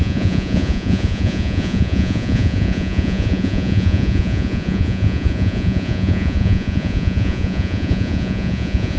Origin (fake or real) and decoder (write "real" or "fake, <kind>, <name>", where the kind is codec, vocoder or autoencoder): fake, vocoder, Vocos